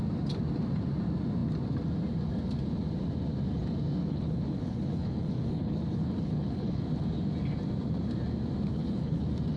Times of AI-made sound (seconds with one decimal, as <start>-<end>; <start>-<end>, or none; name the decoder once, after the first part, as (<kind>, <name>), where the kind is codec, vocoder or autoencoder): 4.0-6.8 (codec, HILCodec); 8.7-9.2